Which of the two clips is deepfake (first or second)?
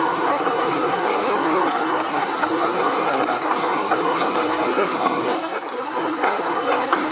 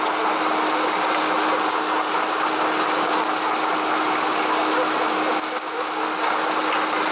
first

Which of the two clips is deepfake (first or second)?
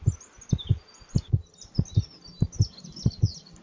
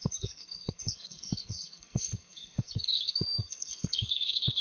second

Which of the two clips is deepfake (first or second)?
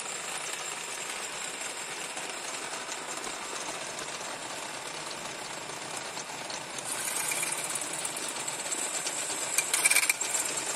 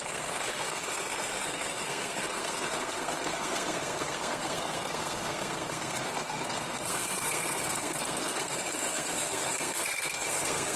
second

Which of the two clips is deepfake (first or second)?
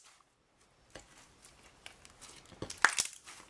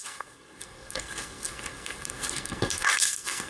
second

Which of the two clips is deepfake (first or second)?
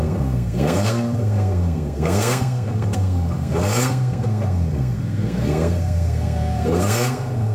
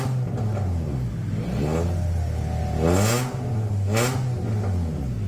first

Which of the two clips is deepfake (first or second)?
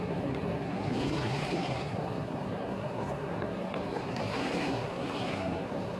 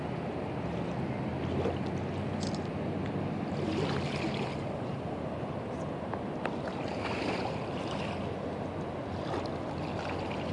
first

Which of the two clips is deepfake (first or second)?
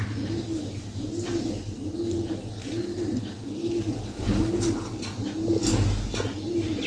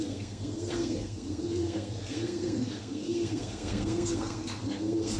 second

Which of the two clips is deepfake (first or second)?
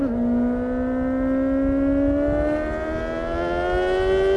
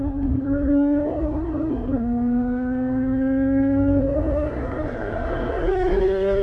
second